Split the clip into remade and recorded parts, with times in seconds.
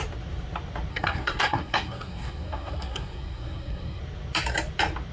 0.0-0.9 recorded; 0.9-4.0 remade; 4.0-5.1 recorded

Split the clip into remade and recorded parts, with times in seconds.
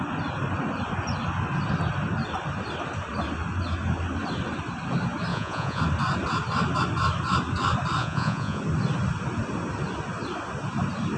0.0-5.3 recorded; 5.3-5.8 remade; 5.8-8.0 recorded; 8.0-8.6 remade; 8.6-11.2 recorded